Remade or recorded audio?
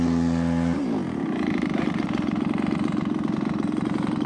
recorded